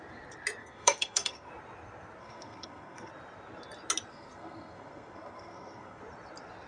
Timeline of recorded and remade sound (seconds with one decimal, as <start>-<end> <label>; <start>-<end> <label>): 0.0-0.6 recorded; 0.6-1.5 remade; 1.5-2.2 recorded; 2.2-3.1 remade; 3.1-4.1 recorded; 4.1-6.0 remade; 6.0-6.7 recorded